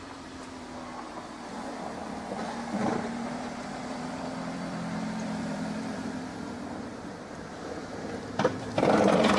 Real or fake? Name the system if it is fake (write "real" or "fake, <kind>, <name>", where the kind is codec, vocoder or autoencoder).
fake, vocoder, BigVGAN v2